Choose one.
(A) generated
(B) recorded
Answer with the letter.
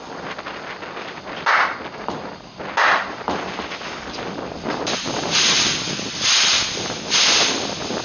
B